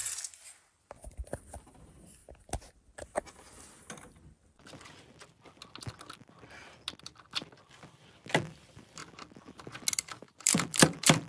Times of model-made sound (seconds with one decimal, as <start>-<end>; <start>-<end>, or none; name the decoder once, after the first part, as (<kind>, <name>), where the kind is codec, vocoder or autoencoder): 0.6-2.2 (vocoder, BigVGAN v2); 7.0-9.0; 10.4-11.3

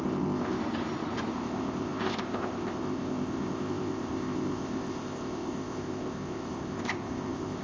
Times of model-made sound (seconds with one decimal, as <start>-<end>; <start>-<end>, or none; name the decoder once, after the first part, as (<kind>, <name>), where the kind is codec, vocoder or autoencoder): 0.0-0.6 (codec, ZipCodec); 1.3-7.6

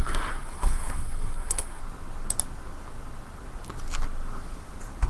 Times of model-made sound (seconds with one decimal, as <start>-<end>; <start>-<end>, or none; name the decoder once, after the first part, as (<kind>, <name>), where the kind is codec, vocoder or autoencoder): 0.0-1.8 (codec, SNAC)

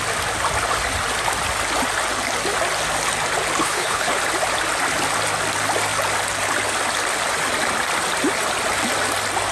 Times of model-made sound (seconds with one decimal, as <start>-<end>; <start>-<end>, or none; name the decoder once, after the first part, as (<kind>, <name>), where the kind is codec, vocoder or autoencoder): 3.6-4.2 (codec, HILCodec)